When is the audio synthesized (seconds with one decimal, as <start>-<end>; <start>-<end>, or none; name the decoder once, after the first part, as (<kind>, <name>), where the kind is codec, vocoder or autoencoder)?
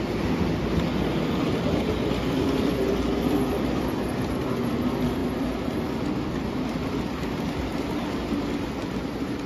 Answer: none